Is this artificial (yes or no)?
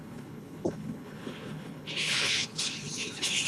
yes